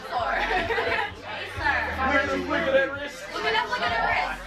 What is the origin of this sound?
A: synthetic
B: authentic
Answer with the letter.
B